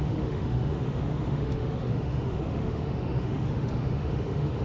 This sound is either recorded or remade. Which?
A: remade